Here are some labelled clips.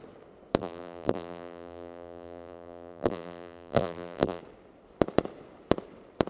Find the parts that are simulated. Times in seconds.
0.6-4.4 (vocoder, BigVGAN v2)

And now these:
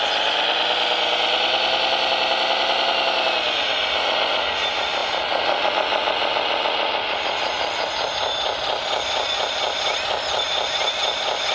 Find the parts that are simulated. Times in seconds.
none

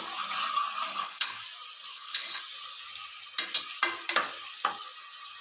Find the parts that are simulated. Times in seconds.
0.9-1.4 (codec, HILCodec); 1.9-2.4